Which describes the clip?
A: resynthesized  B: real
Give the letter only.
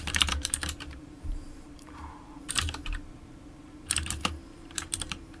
A